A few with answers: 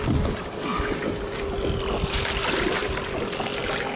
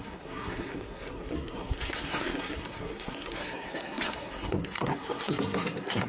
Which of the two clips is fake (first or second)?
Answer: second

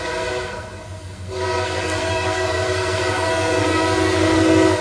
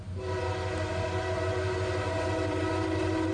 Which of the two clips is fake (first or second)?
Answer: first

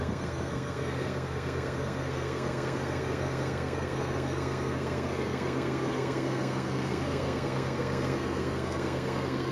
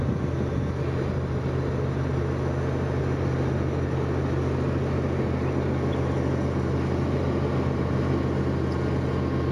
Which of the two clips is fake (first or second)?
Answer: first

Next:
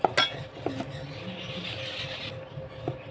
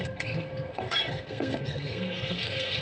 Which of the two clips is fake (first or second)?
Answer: second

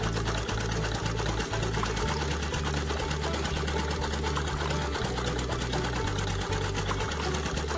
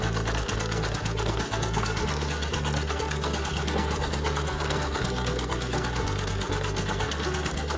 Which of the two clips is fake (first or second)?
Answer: second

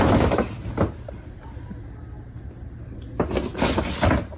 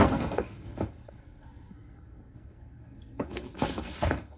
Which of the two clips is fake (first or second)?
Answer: second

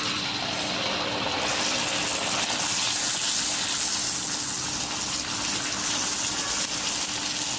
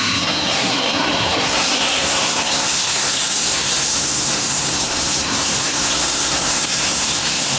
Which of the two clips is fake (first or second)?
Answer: second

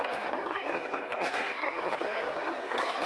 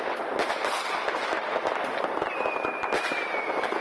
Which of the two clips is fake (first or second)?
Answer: first